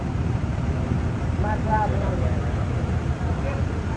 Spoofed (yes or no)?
yes